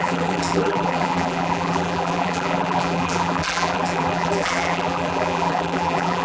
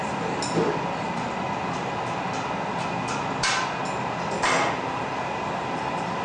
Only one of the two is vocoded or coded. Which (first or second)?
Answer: first